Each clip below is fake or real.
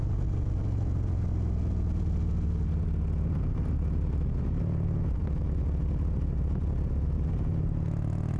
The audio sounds real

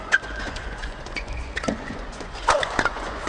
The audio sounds fake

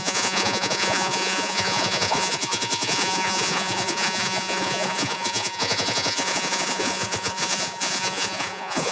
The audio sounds fake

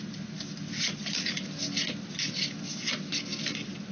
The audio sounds real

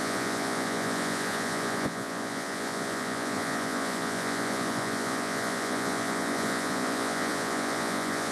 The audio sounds fake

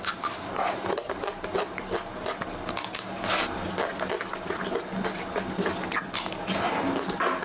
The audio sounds real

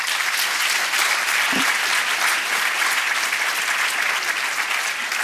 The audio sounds real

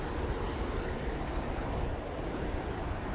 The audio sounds real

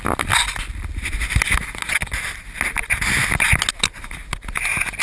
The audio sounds real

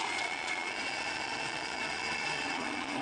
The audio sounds fake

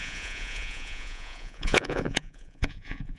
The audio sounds fake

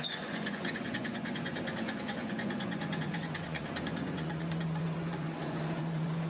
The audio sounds fake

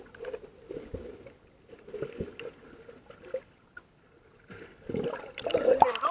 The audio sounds real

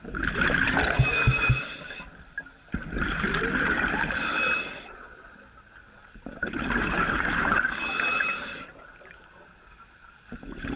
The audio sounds real